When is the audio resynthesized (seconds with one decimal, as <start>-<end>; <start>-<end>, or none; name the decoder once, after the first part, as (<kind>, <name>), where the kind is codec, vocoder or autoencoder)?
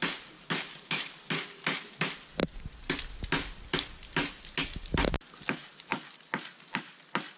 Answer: 0.0-1.2 (vocoder, BigVGAN v2)